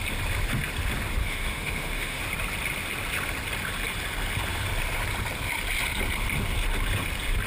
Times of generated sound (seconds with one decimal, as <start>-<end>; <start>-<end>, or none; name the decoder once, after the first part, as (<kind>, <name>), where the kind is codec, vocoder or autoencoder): 1.2-2.2 (autoencoder, DAC-VAE)